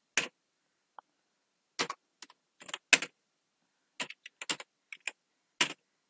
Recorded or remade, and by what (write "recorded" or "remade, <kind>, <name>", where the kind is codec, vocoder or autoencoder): recorded